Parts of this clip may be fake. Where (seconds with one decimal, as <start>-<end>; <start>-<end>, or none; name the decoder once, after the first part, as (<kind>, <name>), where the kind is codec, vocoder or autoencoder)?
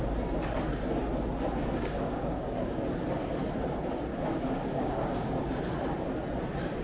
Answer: 1.6-2.8 (codec, DAC); 4.1-5.6